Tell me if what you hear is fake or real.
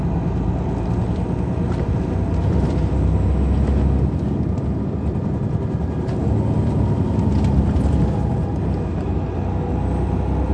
real